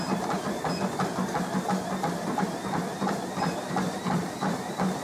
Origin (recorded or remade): remade